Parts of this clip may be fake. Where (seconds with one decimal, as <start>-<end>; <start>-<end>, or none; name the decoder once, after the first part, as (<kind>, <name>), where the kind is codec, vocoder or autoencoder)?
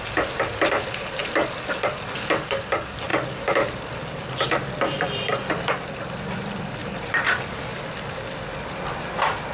1.2-2.0 (vocoder, BigVGAN v2); 3.1-5.3; 6.8-7.8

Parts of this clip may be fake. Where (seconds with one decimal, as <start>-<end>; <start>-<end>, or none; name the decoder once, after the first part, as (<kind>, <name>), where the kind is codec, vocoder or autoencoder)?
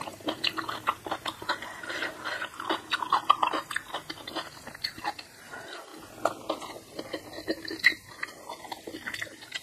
none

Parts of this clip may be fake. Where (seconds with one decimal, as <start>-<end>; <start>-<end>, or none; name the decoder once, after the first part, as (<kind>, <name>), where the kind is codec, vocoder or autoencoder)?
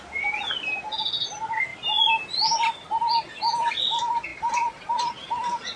none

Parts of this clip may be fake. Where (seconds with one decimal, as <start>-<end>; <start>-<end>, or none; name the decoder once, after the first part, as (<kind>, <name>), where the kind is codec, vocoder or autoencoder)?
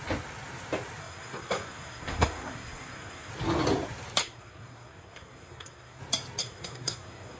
1.0-3.3 (codec, SNAC); 4.2-6.0; 6.4-7.4